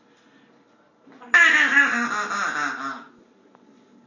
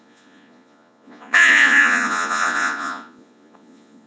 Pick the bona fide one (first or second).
first